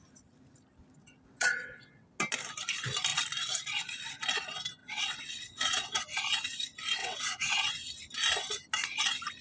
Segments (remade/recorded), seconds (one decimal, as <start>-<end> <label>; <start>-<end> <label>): 0.0-1.0 recorded; 1.0-2.1 remade; 2.1-4.8 recorded; 4.8-6.0 remade; 6.0-7.0 recorded; 7.0-7.7 remade; 7.7-9.4 recorded